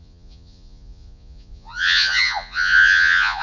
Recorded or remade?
remade